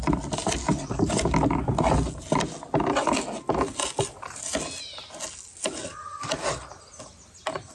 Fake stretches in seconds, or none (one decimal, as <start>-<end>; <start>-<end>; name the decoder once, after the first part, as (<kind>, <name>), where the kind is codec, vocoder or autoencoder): none